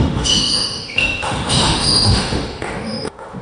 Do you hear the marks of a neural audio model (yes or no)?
yes